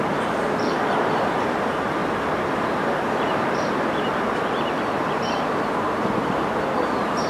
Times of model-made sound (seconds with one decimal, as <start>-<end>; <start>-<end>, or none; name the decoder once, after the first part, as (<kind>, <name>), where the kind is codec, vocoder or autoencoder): 0.0-2.0 (vocoder, BigVGAN v2); 3.1-7.3